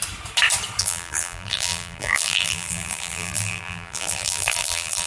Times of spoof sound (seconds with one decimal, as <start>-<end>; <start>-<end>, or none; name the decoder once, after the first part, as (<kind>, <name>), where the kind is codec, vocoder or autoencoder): 0.8-5.1 (vocoder, BigVGAN v2)

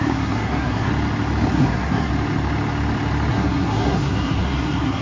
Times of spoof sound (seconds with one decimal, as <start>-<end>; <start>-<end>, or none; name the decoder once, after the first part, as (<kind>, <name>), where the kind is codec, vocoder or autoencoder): 0.0-0.9 (codec, SNAC); 1.5-2.1; 3.3-5.0